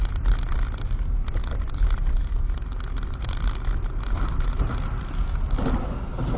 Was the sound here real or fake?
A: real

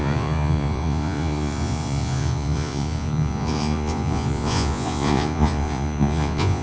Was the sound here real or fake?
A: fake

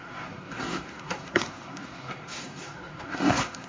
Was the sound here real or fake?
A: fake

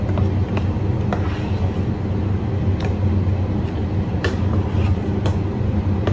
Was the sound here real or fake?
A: real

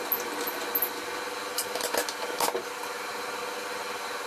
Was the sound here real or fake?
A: real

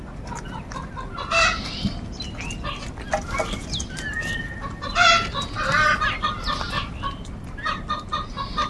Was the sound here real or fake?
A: real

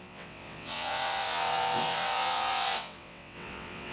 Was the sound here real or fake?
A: fake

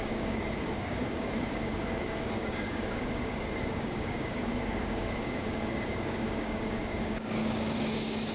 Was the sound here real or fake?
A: fake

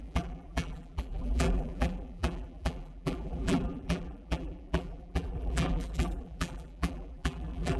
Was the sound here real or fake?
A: fake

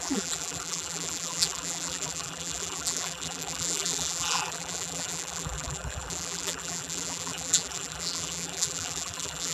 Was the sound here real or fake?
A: fake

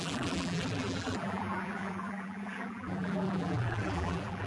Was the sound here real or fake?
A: fake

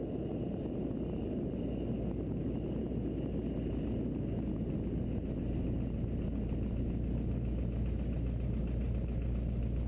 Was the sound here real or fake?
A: real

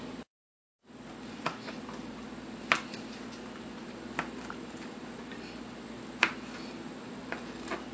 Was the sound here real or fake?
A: real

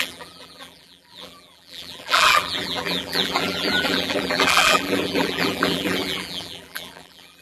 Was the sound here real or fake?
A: fake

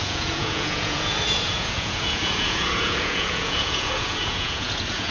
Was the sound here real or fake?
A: fake